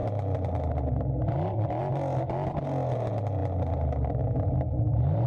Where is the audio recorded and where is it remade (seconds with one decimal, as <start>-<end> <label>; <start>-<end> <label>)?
0.0-5.3 recorded